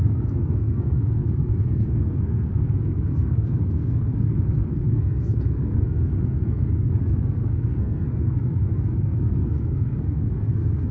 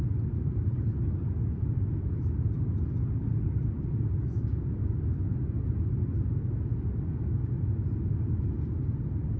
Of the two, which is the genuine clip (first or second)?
second